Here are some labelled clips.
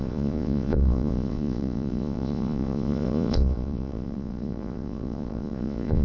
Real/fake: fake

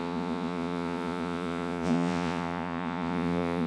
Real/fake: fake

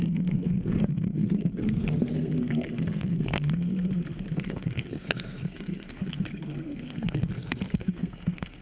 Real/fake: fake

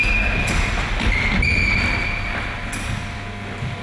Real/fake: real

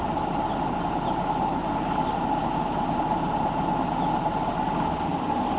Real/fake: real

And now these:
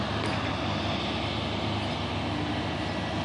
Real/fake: real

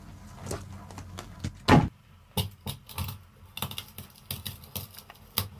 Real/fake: real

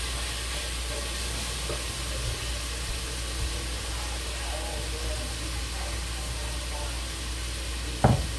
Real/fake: real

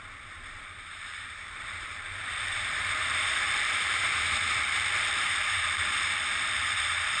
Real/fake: fake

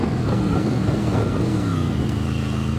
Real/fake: fake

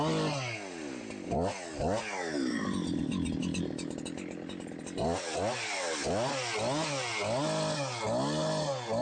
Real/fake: real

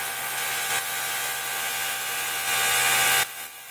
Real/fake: real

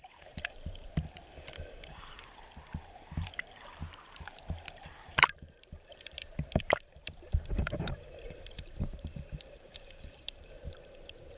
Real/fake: fake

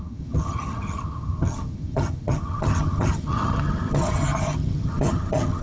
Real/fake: fake